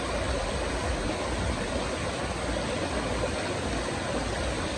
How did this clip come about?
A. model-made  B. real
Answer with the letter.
B